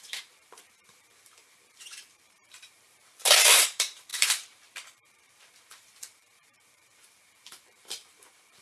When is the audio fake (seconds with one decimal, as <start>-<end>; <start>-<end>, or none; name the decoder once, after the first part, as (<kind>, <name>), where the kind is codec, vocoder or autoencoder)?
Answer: 0.0-8.6 (vocoder, BigVGAN v2)